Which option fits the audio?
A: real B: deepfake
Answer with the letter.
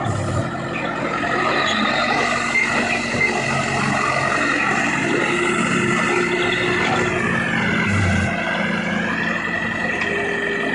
A